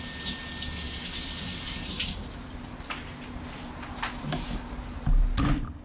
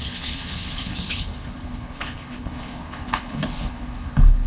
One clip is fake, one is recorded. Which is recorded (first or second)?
first